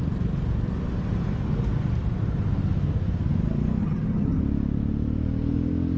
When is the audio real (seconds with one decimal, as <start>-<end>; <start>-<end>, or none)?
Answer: 0.0-3.8; 4.4-6.0